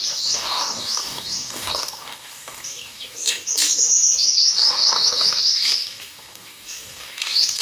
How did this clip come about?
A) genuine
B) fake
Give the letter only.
B